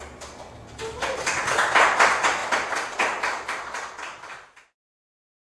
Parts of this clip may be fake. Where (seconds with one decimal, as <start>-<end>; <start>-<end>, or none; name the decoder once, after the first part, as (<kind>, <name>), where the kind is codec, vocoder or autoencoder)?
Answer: none